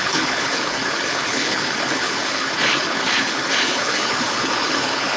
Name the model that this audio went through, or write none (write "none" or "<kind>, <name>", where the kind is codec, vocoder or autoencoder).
codec, HILCodec